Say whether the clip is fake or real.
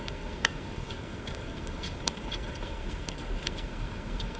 fake